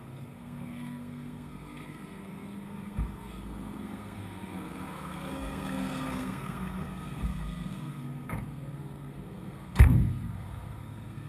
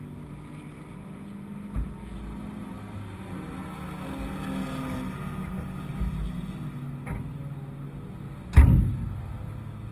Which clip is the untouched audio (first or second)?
second